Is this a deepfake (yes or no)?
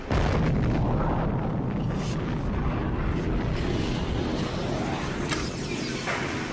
no